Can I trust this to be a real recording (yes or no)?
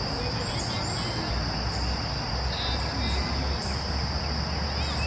yes